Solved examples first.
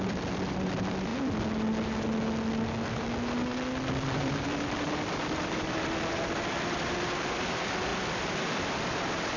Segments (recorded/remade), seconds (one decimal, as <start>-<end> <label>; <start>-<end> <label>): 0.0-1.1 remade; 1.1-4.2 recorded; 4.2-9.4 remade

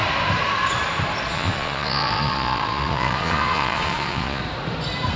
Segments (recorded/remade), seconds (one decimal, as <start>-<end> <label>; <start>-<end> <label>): 0.0-1.3 recorded; 1.3-4.4 remade; 4.4-5.2 recorded

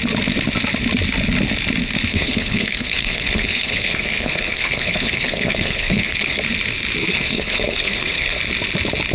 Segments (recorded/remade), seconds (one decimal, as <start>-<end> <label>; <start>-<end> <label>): 0.0-2.1 recorded; 2.1-6.4 remade; 6.4-7.0 recorded; 7.0-8.4 remade; 8.4-9.1 recorded

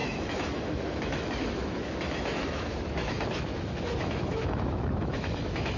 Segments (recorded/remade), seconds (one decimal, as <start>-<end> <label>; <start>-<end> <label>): 0.0-5.8 remade